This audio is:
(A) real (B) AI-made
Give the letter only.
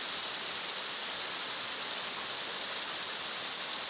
A